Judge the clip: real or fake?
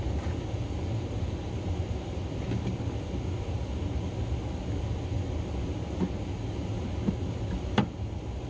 real